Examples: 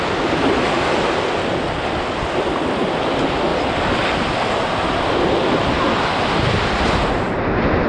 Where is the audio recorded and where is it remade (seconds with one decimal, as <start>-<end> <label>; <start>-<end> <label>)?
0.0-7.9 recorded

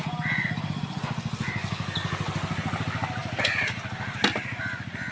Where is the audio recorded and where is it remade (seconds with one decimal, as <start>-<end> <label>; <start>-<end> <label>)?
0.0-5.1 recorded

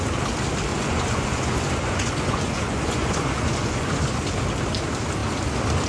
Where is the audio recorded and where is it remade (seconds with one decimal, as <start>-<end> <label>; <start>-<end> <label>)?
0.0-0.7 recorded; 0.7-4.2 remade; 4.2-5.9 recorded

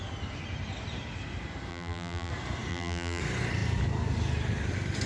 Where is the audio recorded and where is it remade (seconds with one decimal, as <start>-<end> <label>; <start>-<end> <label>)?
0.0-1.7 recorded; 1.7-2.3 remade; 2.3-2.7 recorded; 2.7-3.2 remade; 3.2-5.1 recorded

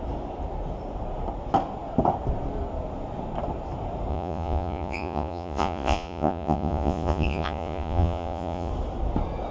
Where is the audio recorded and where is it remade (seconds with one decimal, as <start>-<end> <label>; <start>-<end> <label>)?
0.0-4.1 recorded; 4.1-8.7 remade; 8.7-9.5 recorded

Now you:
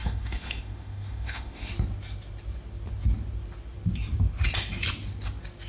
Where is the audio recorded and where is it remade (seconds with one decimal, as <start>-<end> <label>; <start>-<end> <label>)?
0.0-1.7 remade; 1.7-5.7 recorded

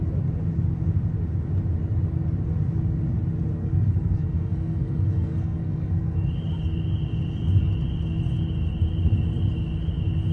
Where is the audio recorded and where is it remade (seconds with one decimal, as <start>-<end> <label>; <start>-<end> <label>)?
0.0-3.6 recorded; 3.6-6.3 remade; 6.3-10.3 recorded